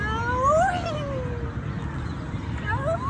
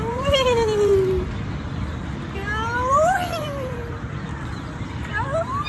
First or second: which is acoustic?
first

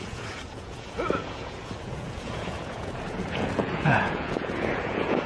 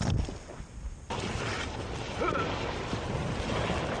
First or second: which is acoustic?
second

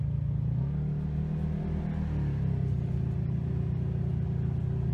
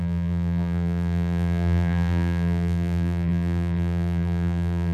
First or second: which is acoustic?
first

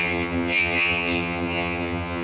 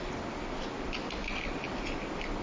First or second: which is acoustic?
second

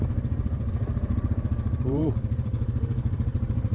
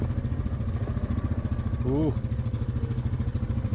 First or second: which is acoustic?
second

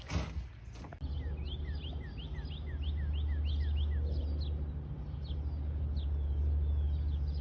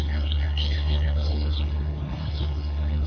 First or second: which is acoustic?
first